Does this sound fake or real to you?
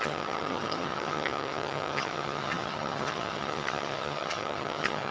fake